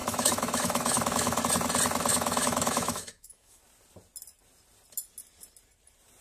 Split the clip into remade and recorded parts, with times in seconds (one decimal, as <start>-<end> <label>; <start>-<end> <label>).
0.0-1.4 remade; 1.4-2.1 recorded; 2.1-3.6 remade; 3.6-6.2 recorded